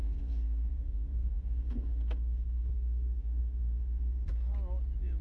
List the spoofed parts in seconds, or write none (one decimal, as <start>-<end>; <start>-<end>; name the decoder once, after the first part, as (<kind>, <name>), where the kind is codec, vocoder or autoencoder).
0.0-4.3 (codec, SNAC)